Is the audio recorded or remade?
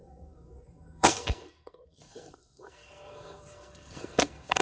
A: remade